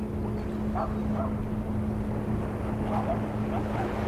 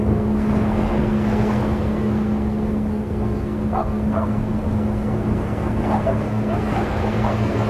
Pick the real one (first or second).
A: first